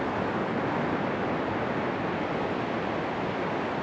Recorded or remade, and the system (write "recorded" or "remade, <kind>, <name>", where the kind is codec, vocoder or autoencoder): recorded